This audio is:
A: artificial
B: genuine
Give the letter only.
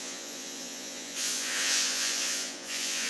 A